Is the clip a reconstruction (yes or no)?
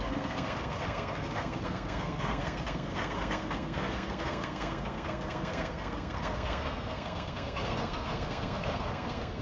yes